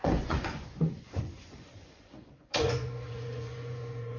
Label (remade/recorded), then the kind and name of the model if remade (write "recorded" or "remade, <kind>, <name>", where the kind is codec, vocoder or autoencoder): remade, vocoder, Vocos